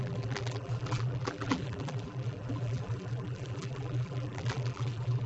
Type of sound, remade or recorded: remade